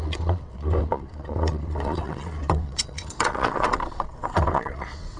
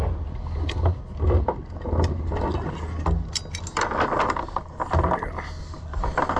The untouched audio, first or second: second